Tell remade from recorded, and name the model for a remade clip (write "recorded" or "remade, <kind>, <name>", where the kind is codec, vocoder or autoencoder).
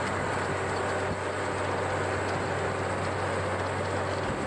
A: recorded